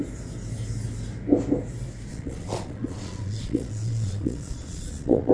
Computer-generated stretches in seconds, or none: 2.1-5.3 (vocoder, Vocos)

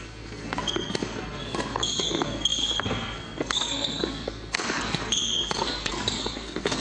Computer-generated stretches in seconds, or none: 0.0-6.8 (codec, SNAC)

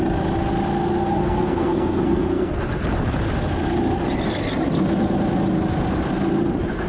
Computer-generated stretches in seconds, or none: 1.0-2.5 (codec, SNAC)